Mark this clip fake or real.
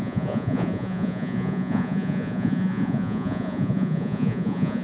fake